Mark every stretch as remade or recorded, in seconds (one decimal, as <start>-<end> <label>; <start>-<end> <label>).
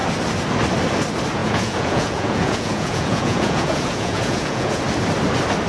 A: 0.0-1.4 recorded; 1.4-4.8 remade; 4.8-5.7 recorded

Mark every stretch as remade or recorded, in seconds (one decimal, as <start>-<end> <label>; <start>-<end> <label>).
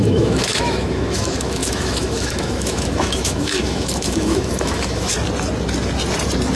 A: 0.0-5.1 remade; 5.1-6.6 recorded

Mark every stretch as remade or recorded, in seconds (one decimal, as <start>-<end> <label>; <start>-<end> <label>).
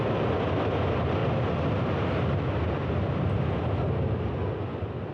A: 0.0-5.1 recorded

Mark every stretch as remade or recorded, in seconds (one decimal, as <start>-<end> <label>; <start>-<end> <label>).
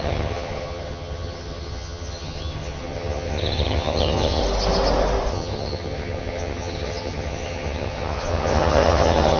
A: 0.0-4.4 remade; 4.4-5.3 recorded; 5.3-9.4 remade